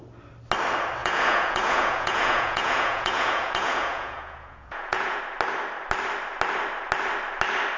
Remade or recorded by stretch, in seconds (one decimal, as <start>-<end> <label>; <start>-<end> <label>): 0.0-1.0 recorded; 1.0-5.2 remade; 5.2-7.8 recorded